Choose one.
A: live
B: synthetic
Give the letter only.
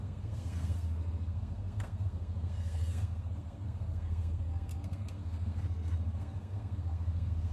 B